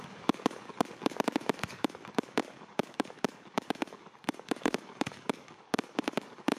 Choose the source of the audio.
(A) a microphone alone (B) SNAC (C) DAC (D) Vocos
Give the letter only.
C